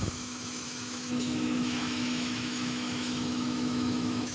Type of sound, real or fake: fake